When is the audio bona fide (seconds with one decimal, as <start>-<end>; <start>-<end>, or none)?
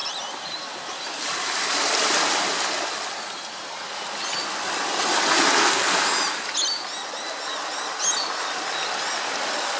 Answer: 0.6-9.8